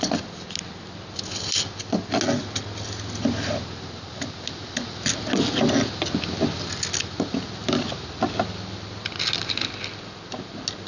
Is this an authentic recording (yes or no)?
yes